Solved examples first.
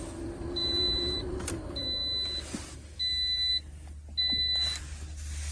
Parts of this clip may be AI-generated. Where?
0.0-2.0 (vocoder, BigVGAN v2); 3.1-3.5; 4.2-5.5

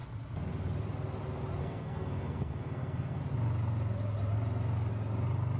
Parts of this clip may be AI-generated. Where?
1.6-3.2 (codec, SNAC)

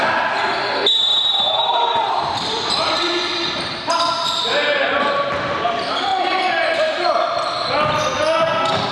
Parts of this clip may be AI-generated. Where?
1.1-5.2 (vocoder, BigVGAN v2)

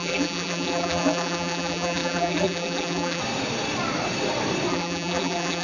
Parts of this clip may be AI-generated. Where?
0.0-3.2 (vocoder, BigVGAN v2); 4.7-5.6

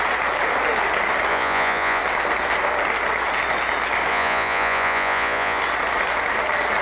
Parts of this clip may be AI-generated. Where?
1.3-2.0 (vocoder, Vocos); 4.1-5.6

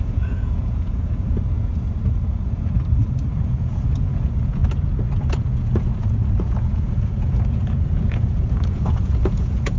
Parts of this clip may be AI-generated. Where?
0.0-1.7 (vocoder, Vocos); 3.3-4.6; 5.2-9.8

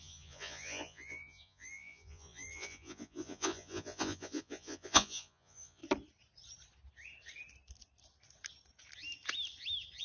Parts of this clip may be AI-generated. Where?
0.0-5.8 (vocoder, Vocos)

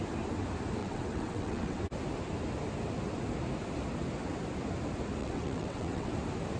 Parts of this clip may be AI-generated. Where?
0.8-1.8 (vocoder, WaveNeXt); 5.2-6.1